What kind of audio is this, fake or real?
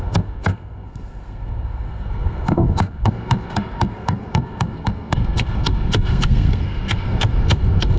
fake